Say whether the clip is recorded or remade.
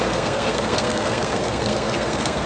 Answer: remade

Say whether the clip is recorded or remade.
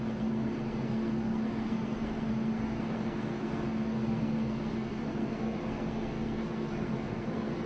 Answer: remade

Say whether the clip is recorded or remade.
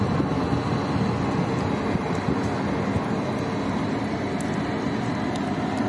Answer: recorded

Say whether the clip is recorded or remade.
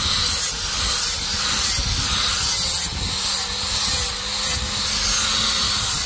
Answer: recorded